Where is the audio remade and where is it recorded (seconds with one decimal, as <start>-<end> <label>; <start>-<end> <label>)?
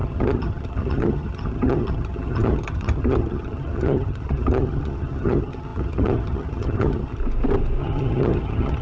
0.0-7.2 remade; 7.2-7.8 recorded; 7.8-8.8 remade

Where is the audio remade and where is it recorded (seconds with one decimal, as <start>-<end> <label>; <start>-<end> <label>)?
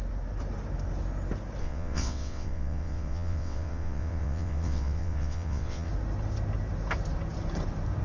0.0-1.6 recorded; 1.6-5.9 remade; 5.9-8.0 recorded